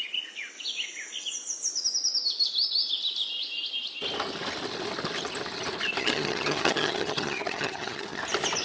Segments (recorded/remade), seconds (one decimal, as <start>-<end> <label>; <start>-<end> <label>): 0.0-6.0 recorded; 6.0-8.2 remade; 8.2-8.6 recorded